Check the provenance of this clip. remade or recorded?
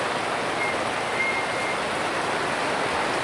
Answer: recorded